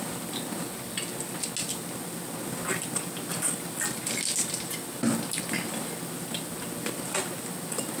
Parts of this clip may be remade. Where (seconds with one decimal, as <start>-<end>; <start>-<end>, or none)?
none